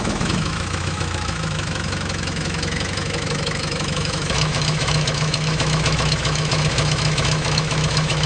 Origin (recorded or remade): remade